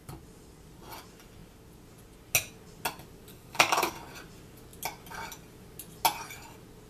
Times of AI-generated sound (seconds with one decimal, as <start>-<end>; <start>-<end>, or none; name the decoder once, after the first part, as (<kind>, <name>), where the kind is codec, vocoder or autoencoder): 3.3-3.9 (codec, DAC)